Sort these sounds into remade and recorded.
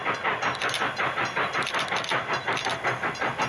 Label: recorded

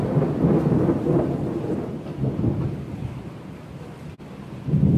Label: recorded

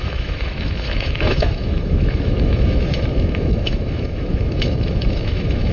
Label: remade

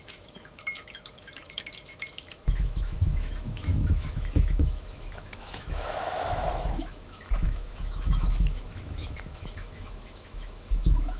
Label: remade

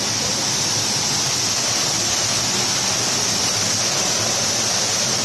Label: recorded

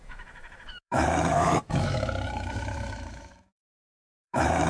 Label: remade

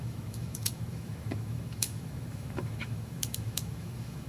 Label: remade